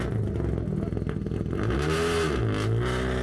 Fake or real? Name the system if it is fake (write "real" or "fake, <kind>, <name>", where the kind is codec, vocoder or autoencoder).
real